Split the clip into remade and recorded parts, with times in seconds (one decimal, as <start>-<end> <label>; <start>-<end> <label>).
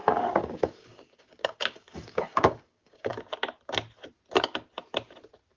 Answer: 0.0-3.1 remade; 3.1-5.6 recorded